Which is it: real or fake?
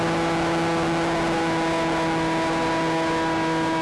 real